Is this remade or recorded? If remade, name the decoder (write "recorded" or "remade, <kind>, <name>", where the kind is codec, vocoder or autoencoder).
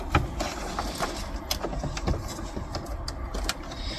recorded